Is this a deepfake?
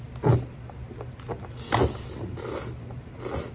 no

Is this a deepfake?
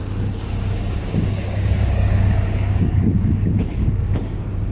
yes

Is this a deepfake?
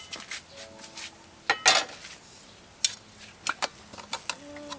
no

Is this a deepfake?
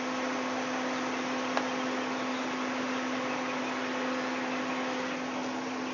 no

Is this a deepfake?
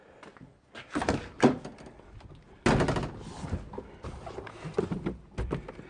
no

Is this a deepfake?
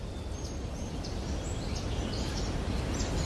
no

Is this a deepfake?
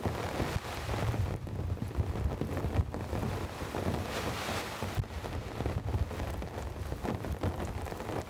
no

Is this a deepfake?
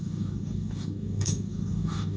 yes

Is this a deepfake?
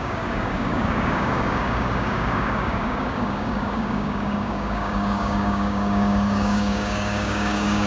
yes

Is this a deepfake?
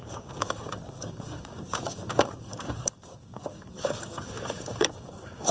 yes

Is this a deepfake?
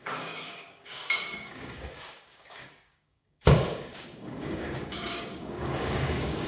yes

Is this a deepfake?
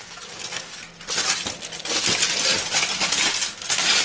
no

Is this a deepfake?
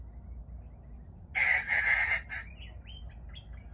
no